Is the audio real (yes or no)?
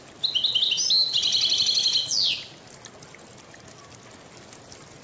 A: yes